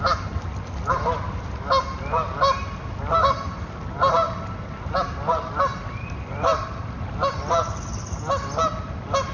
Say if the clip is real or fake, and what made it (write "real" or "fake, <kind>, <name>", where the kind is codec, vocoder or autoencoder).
real